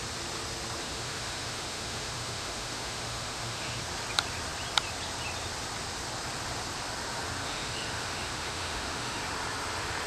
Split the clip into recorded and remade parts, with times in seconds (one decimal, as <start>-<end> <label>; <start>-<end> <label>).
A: 0.0-0.8 recorded; 0.8-3.8 remade; 3.8-7.4 recorded; 7.4-9.2 remade; 9.2-10.1 recorded